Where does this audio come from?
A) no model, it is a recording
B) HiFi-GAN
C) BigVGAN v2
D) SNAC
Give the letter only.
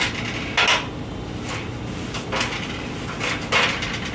A